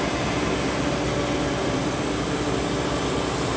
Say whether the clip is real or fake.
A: real